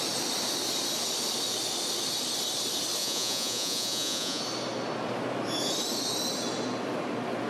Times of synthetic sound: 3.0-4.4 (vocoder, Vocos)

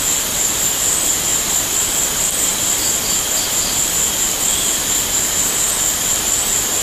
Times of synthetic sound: none

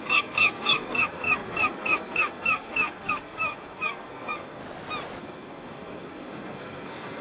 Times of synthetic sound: 0.0-4.6 (codec, SNAC); 5.2-7.2